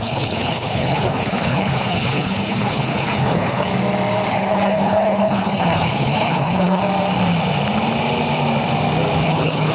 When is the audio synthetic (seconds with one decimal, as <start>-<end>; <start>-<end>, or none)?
0.0-3.7; 4.3-6.8; 9.2-9.7